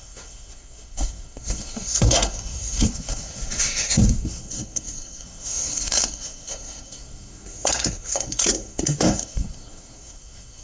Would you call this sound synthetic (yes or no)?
yes